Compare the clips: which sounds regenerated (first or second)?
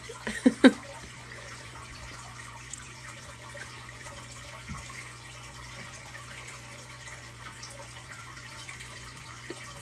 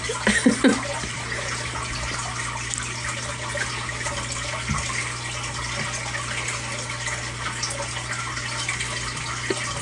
first